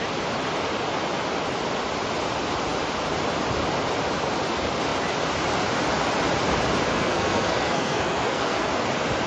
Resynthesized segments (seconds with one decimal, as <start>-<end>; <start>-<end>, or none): 6.9-8.7